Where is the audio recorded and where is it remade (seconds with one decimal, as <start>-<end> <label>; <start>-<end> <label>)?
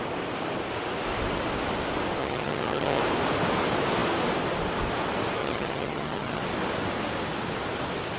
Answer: 0.0-2.2 recorded; 2.2-3.0 remade; 3.0-5.4 recorded; 5.4-6.4 remade; 6.4-8.2 recorded